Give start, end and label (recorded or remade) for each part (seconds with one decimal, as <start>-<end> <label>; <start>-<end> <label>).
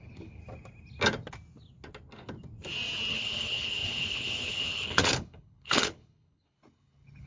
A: 0.0-0.4 remade; 0.4-3.1 recorded; 3.1-7.3 remade